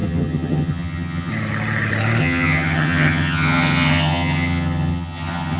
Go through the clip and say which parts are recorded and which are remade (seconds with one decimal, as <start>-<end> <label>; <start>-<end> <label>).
0.0-1.3 remade; 1.3-2.2 recorded; 2.2-5.6 remade